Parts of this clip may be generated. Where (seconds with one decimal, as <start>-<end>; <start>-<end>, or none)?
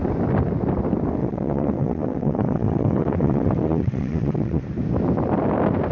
1.2-4.6